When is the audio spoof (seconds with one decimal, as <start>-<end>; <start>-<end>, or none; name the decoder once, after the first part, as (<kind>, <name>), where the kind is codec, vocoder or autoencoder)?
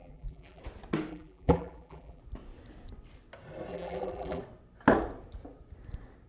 0.0-0.6 (vocoder, BigVGAN v2); 1.1-2.2; 3.7-4.4